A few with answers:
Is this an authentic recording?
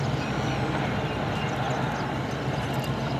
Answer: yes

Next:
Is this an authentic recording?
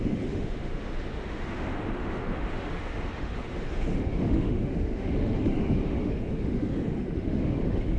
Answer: no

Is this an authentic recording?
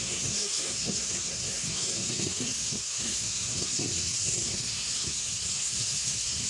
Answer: no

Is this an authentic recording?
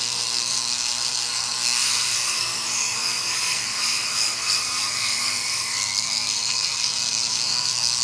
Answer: no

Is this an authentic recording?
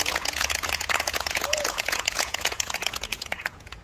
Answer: no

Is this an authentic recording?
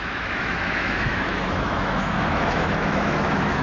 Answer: no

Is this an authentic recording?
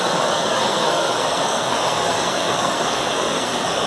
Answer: no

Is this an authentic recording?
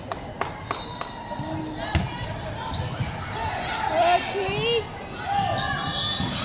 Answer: yes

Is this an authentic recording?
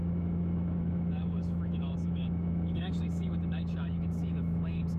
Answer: no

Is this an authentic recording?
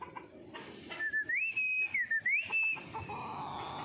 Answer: yes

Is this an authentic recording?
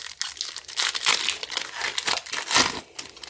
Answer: yes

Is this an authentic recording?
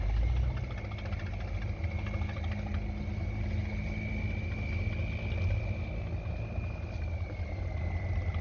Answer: yes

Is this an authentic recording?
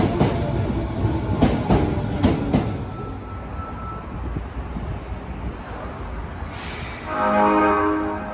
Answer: yes